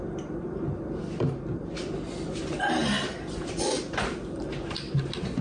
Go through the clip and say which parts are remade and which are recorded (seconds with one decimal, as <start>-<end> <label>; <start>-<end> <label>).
0.0-2.8 recorded; 2.8-3.5 remade; 3.5-5.4 recorded